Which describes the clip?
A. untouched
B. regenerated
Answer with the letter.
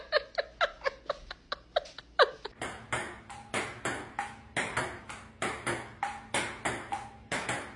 A